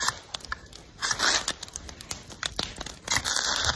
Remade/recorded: recorded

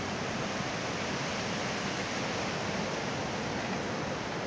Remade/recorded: recorded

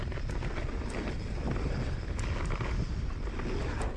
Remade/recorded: recorded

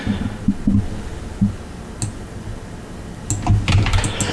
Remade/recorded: recorded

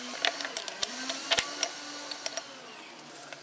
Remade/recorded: recorded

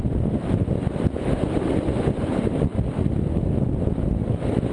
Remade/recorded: recorded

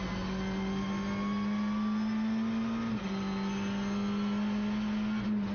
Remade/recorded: recorded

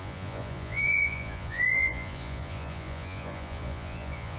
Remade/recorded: remade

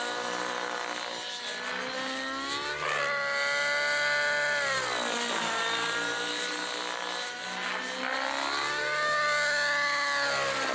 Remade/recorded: recorded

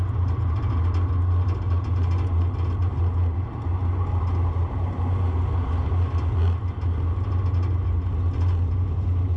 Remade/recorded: recorded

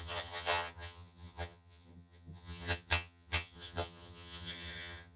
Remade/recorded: remade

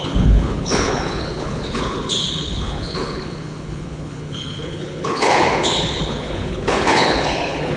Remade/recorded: remade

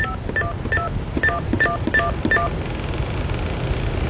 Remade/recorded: recorded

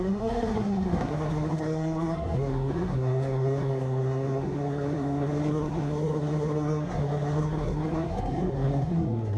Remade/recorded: remade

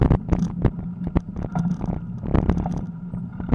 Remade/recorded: recorded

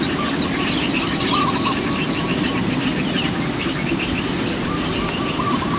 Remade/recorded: recorded